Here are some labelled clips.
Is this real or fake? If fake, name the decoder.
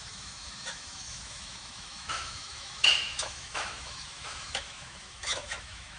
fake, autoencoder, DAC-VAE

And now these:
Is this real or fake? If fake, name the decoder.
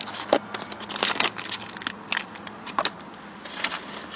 real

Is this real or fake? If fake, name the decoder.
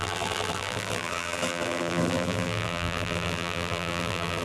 fake, vocoder, BigVGAN v2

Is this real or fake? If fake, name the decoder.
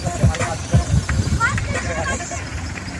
real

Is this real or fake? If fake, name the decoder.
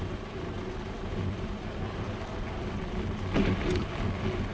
real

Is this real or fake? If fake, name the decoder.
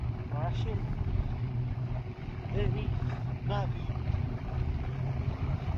real